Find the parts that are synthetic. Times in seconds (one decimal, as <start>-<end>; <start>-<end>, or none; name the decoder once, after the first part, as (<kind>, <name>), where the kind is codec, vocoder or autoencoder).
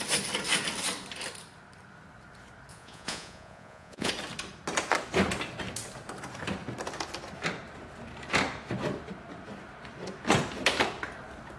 2.7-4.1 (vocoder, Vocos)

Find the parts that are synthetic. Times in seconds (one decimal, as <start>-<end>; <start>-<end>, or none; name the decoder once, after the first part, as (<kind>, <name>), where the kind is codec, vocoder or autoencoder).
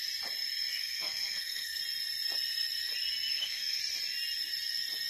0.7-1.8 (codec, SNAC); 3.3-3.8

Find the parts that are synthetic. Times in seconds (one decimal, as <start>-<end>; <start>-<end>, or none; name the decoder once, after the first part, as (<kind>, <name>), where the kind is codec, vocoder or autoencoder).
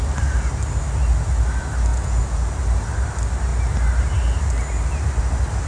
1.9-2.4 (vocoder, Vocos)